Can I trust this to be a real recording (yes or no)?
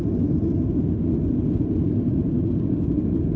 yes